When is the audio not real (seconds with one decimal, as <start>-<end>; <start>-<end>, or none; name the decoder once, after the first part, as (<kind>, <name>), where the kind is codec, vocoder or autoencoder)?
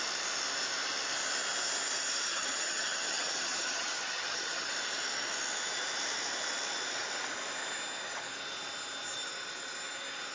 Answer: 2.3-4.7 (vocoder, HiFi-GAN)